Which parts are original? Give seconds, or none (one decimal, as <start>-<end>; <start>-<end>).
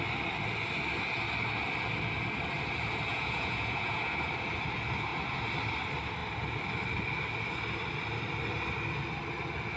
0.0-3.1; 4.3-9.8